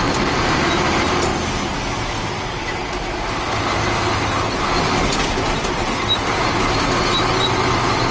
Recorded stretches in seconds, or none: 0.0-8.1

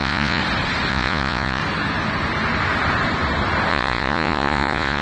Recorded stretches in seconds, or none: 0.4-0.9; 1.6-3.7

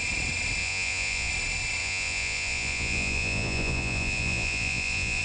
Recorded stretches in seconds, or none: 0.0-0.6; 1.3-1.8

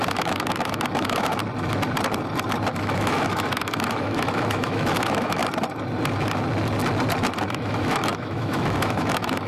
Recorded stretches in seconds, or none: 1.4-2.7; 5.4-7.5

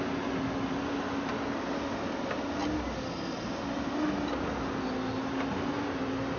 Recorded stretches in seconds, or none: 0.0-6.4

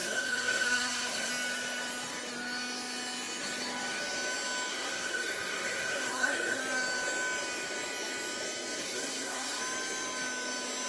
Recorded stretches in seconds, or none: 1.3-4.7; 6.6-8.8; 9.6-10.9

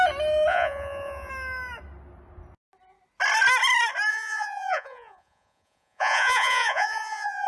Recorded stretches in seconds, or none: 0.0-0.5; 1.3-4.1